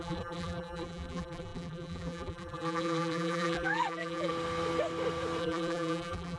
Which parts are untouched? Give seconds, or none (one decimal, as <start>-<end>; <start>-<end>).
4.3-5.4